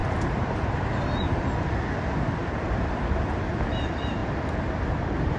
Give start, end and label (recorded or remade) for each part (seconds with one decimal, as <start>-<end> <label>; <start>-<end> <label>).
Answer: 0.0-5.4 recorded